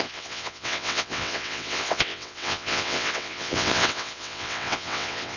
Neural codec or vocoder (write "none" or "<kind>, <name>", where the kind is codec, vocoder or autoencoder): vocoder, WaveNeXt